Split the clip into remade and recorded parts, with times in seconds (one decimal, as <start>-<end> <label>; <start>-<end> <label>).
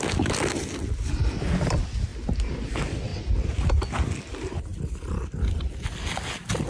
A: 0.0-6.7 recorded